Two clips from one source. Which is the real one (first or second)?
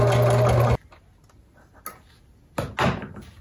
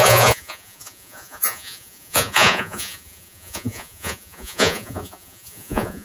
first